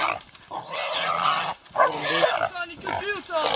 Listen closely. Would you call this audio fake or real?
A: real